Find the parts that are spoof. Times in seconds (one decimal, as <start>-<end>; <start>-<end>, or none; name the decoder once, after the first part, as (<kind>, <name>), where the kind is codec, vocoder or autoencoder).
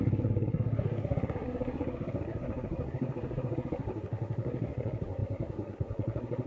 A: 0.0-6.5 (codec, SNAC)